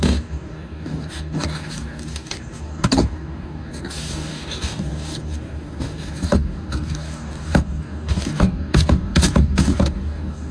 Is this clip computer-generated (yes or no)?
yes